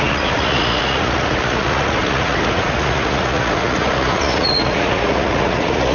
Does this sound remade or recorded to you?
remade